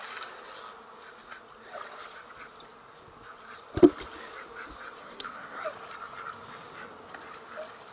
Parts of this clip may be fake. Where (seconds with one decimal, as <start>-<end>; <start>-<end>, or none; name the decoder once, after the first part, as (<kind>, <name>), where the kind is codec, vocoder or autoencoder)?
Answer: 5.0-5.6 (codec, SNAC)

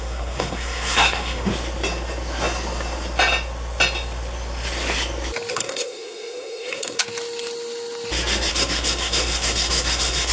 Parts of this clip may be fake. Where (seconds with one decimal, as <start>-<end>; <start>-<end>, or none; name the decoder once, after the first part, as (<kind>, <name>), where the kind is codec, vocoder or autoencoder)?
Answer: 0.0-1.5 (codec, SNAC); 5.5-7.0; 8.5-10.3

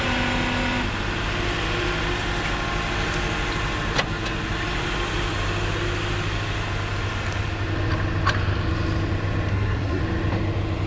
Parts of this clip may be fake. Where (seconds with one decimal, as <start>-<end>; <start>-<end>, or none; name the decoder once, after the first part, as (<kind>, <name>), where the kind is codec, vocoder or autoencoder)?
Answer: 9.5-10.0 (codec, SNAC)

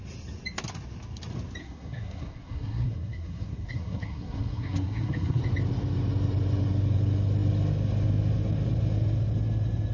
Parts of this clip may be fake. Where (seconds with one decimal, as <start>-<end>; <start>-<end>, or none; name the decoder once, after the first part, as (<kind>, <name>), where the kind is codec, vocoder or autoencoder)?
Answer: 1.6-5.4 (codec, SNAC)

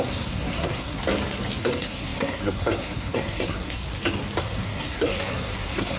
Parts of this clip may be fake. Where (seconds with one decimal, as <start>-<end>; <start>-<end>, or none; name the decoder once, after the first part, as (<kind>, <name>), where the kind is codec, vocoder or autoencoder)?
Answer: 0.0-1.0 (codec, SNAC); 1.6-3.8; 4.4-6.0

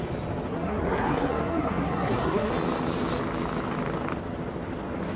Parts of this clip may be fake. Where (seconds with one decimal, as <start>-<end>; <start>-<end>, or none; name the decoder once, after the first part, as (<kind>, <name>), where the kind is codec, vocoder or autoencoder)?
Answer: 0.5-2.5 (codec, SNAC)

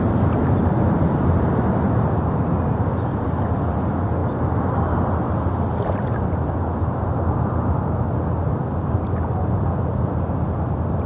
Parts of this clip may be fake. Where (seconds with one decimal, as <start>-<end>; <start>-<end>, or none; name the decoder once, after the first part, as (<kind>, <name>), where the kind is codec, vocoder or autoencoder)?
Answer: none